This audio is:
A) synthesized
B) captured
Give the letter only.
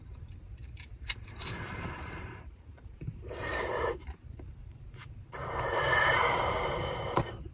A